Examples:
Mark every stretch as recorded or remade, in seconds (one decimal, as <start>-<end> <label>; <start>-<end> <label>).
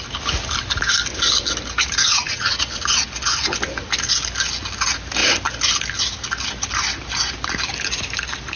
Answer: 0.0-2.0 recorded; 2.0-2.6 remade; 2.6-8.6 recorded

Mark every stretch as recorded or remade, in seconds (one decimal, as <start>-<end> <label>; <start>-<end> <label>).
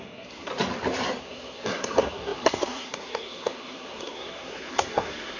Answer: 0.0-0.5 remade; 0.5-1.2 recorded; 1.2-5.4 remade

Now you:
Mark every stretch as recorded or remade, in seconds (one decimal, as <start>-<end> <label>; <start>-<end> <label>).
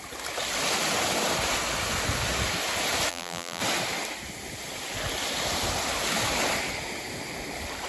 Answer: 0.0-3.1 recorded; 3.1-3.6 remade; 3.6-7.9 recorded